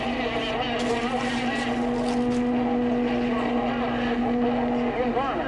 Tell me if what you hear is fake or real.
real